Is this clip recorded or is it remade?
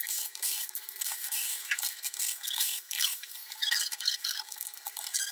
remade